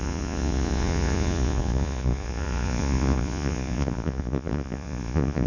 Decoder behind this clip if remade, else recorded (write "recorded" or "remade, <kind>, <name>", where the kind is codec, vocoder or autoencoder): remade, vocoder, Vocos